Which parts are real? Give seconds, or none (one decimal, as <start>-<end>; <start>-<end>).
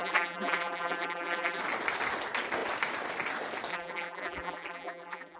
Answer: 1.6-3.7